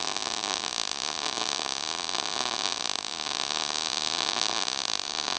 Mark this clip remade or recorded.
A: recorded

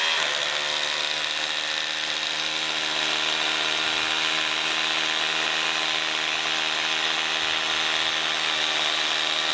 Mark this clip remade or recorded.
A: recorded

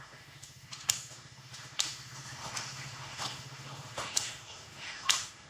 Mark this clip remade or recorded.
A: remade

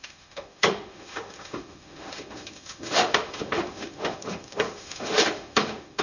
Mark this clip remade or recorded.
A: remade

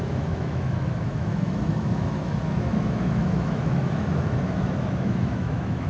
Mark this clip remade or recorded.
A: remade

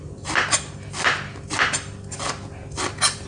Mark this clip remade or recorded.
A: recorded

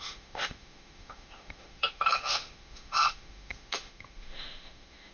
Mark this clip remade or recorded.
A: remade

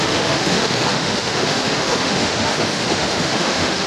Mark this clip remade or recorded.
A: remade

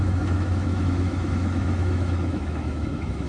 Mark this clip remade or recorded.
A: remade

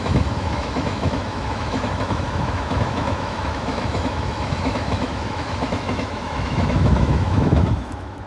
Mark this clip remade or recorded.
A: remade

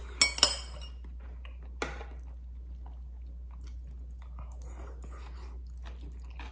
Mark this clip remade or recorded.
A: recorded